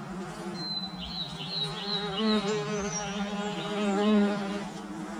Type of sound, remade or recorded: recorded